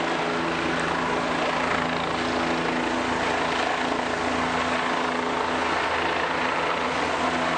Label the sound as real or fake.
real